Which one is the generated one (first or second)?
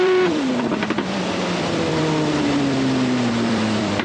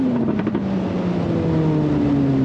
first